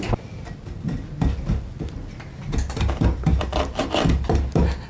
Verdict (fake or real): real